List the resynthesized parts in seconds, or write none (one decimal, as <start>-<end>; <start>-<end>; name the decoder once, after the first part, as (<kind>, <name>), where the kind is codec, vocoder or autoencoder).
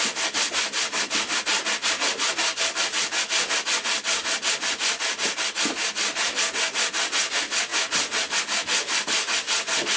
none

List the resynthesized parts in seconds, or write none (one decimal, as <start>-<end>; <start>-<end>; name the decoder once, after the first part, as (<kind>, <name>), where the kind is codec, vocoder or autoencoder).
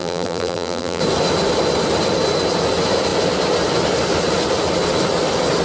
0.0-1.0 (vocoder, BigVGAN v2)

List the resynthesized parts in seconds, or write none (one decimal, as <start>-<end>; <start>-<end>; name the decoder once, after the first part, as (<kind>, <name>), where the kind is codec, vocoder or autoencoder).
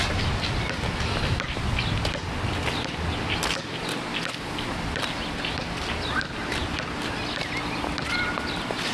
none